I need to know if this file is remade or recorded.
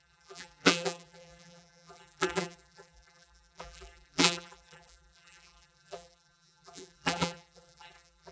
remade